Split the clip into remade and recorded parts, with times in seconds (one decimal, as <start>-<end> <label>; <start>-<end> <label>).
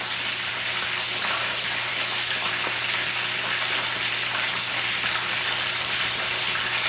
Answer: 0.0-1.9 recorded; 1.9-2.5 remade; 2.5-6.9 recorded